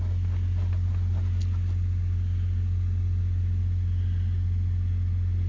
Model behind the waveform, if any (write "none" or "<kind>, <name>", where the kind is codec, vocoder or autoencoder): none